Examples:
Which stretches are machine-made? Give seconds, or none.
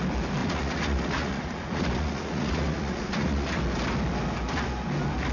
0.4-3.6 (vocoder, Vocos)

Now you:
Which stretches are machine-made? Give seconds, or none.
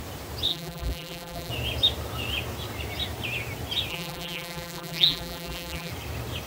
0.5-1.5 (vocoder, BigVGAN v2); 3.9-5.9